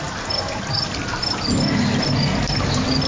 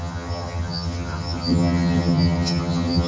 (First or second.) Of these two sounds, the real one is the first